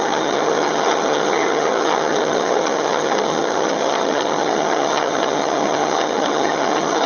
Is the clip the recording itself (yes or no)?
no